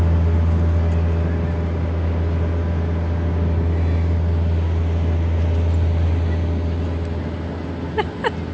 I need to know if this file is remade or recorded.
recorded